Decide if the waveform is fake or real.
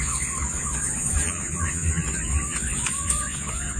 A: fake